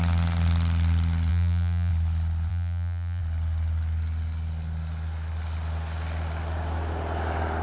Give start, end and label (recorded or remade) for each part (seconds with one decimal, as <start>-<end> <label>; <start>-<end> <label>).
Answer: 0.0-1.3 recorded; 1.3-1.9 remade; 1.9-2.5 recorded; 2.5-3.2 remade; 3.2-7.6 recorded